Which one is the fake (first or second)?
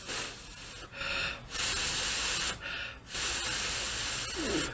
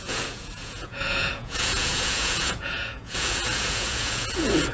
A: second